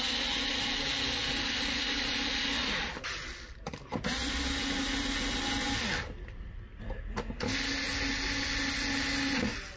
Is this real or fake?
real